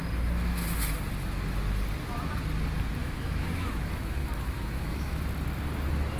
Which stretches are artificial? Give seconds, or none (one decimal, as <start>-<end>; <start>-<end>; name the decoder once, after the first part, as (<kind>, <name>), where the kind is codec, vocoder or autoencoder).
3.0-5.3 (autoencoder, DAC-VAE)